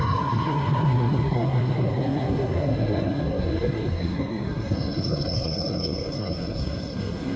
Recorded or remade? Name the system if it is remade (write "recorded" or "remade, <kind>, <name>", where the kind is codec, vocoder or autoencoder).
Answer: remade, codec, SNAC